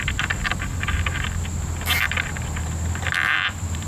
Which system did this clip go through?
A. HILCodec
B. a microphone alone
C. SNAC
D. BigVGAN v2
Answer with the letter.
B